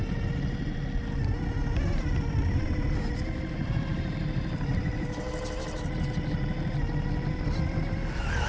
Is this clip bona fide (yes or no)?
yes